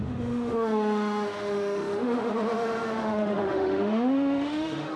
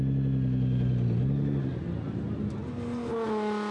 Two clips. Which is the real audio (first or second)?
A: second